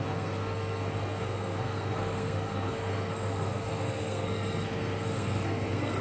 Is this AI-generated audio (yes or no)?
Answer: yes